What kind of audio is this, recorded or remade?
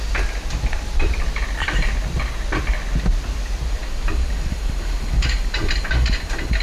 recorded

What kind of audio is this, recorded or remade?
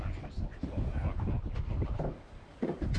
recorded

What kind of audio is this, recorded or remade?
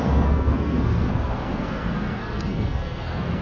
remade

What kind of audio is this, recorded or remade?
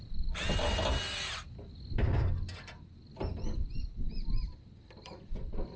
recorded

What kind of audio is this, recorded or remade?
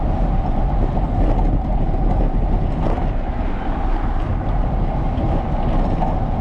recorded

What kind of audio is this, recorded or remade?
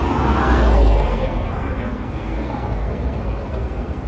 remade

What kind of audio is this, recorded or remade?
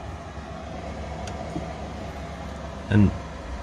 recorded